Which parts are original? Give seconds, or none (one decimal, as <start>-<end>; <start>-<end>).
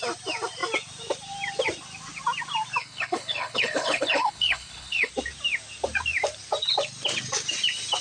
0.0-2.8; 5.1-8.0